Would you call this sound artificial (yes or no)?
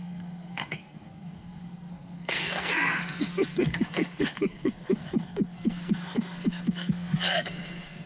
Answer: yes